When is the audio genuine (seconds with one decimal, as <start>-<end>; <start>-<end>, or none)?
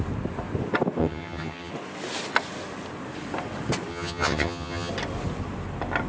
0.0-1.0; 1.7-3.9; 4.9-6.1